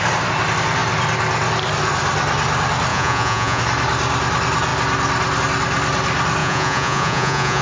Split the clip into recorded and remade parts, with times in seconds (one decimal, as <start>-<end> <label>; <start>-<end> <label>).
0.0-2.9 recorded; 2.9-3.6 remade; 3.6-6.4 recorded; 6.4-7.6 remade